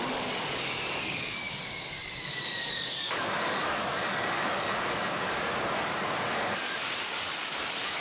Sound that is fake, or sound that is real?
fake